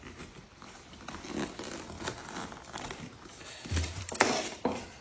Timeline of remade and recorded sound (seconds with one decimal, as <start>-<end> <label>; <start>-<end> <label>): 0.0-5.0 recorded